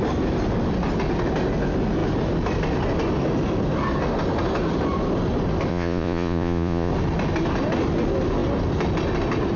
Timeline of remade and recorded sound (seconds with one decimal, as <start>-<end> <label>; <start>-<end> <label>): 0.0-5.7 recorded; 5.7-6.9 remade; 6.9-9.6 recorded

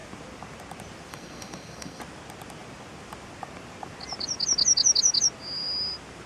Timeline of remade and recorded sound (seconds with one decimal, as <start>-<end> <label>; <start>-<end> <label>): 0.0-1.1 recorded; 1.1-2.0 remade; 2.0-6.3 recorded

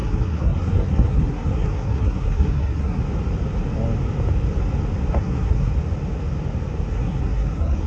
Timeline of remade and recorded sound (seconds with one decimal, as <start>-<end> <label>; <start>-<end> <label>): 0.0-3.0 remade; 3.0-5.1 recorded; 5.1-5.7 remade; 5.7-6.9 recorded; 6.9-7.9 remade

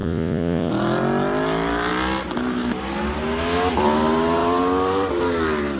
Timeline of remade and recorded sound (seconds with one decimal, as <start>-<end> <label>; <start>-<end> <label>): 0.0-0.7 remade; 0.7-5.8 recorded

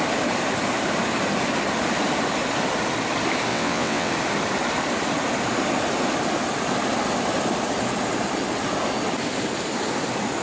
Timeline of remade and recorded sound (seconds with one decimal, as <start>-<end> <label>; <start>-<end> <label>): 0.0-3.5 recorded; 3.5-4.1 remade; 4.1-10.4 recorded

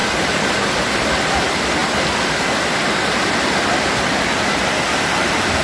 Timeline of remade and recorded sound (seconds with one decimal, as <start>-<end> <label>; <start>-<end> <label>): 0.0-5.6 recorded

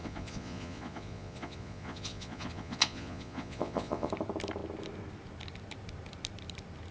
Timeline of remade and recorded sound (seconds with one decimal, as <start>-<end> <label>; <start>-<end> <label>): 0.0-4.1 remade; 4.1-6.9 recorded